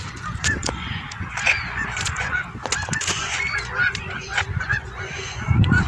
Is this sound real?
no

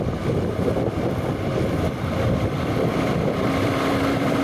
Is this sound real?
no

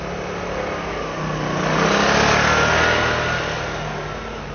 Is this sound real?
yes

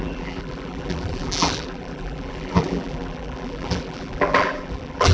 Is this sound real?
no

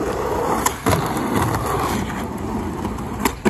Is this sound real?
no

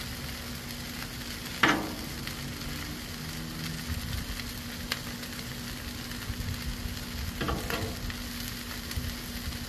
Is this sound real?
yes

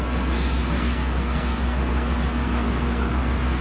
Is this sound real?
no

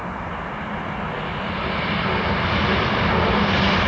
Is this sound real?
yes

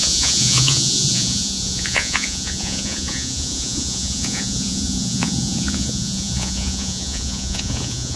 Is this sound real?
no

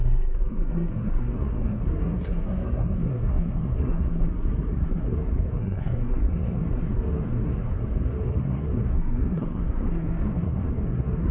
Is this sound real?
no